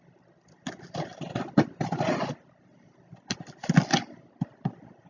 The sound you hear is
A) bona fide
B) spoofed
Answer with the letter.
A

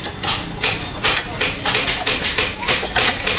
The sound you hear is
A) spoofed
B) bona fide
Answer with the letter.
B